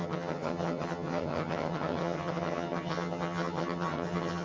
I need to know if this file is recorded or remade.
remade